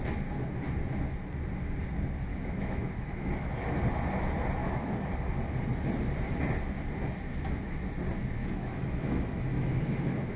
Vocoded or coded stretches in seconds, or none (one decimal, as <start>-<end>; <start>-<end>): 2.3-3.3; 4.6-5.1; 8.4-9.7